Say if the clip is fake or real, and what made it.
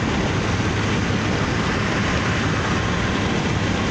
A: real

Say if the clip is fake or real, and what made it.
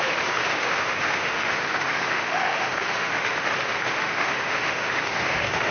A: fake, autoencoder, DAC-VAE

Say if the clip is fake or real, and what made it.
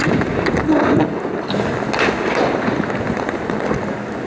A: real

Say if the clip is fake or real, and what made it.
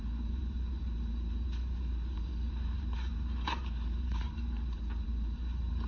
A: fake, vocoder, BigVGAN v2